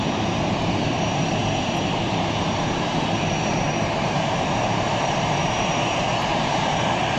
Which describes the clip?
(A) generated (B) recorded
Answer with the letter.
A